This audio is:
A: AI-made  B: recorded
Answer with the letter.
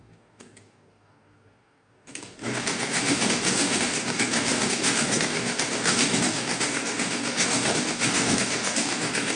A